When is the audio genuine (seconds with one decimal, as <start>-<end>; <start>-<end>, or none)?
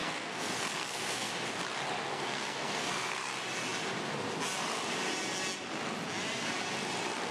1.3-2.1; 3.3-7.3